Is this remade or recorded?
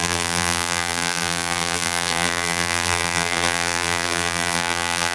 remade